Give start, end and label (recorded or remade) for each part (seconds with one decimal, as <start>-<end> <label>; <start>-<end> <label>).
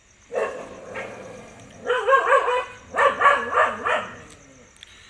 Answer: 0.0-5.1 recorded